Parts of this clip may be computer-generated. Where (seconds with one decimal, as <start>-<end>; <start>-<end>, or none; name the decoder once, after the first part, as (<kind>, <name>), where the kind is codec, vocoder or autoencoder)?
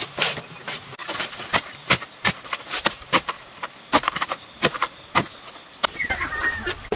1.0-5.2 (vocoder, BigVGAN v2)